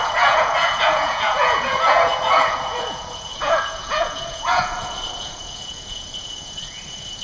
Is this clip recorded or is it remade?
remade